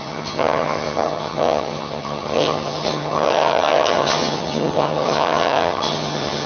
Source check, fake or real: fake